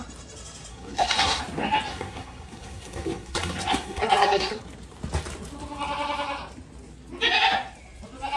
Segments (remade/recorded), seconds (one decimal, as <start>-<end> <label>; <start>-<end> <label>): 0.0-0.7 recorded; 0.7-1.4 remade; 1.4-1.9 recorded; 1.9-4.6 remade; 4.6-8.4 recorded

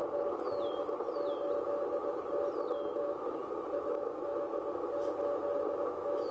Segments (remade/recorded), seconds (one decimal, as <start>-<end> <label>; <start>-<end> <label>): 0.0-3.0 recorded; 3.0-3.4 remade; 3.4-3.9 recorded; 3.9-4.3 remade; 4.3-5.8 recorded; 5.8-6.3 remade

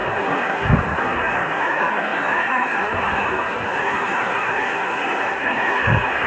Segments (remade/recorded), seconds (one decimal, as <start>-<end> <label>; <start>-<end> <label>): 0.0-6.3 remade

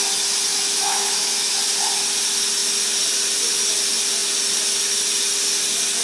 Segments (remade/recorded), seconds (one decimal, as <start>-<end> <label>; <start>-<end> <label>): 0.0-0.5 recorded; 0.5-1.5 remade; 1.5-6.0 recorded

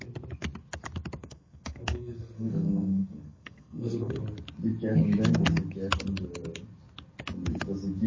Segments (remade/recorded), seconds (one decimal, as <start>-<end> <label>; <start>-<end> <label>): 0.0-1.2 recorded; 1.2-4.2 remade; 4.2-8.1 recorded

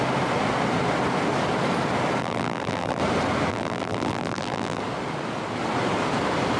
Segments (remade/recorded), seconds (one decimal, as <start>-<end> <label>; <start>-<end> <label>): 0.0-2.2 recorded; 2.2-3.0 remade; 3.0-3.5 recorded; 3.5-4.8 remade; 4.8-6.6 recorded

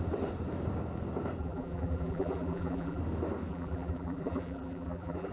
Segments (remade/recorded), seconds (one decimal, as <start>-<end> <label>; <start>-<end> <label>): 0.0-1.4 recorded; 1.4-3.0 remade; 3.0-3.5 recorded; 3.5-5.3 remade